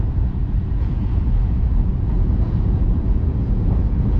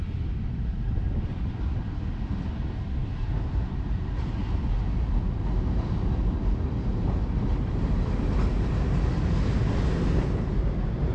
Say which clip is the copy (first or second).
first